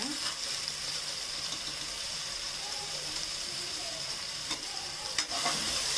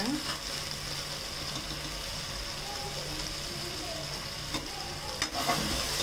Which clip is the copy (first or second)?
first